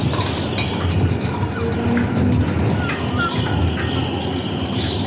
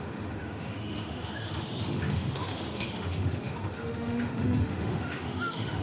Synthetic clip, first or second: second